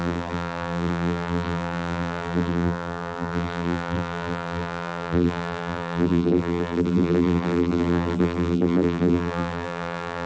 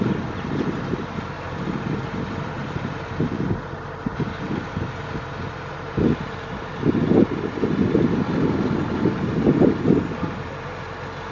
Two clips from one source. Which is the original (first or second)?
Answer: second